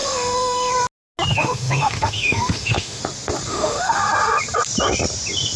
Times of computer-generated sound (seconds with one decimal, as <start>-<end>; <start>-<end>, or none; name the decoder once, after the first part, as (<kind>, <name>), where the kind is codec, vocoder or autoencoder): 0.0-0.7 (autoencoder, DAC-VAE); 1.3-3.0; 3.5-4.0